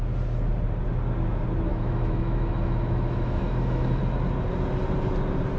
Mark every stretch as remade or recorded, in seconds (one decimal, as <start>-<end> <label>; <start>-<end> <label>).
0.0-1.7 recorded; 1.7-4.0 remade; 4.0-5.6 recorded